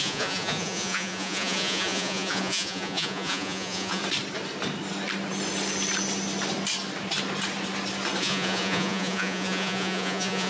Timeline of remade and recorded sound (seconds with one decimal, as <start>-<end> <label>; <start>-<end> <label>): 0.0-4.0 remade; 4.0-8.2 recorded; 8.2-10.5 remade

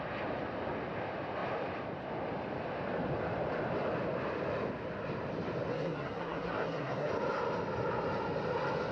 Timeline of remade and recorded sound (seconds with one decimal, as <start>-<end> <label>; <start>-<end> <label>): 0.0-5.7 recorded; 5.7-7.1 remade; 7.1-8.9 recorded

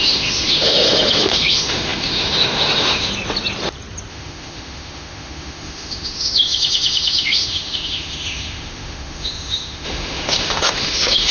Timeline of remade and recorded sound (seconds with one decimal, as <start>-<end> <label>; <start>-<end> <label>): 0.0-3.1 remade; 3.1-4.1 recorded; 4.1-11.3 remade

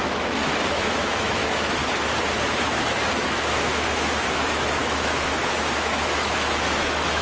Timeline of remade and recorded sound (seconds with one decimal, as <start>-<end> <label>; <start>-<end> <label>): 0.0-1.8 remade; 1.8-2.5 recorded; 2.5-7.2 remade

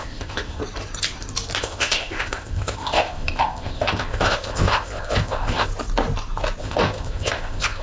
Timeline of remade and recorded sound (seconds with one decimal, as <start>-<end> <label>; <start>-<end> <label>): 0.0-0.6 remade; 0.6-1.6 recorded; 1.6-5.7 remade; 5.7-6.6 recorded; 6.6-7.8 remade

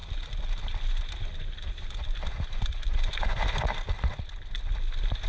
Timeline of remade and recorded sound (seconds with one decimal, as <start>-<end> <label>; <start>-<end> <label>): 0.0-5.3 recorded

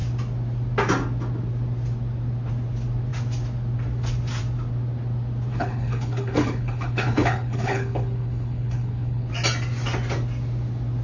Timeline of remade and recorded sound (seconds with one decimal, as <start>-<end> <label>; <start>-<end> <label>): 0.0-5.5 recorded; 5.5-9.3 remade; 9.3-11.0 recorded

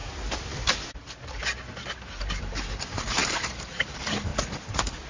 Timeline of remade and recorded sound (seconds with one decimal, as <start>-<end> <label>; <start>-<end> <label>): 0.0-2.4 recorded; 2.4-4.3 remade; 4.3-5.1 recorded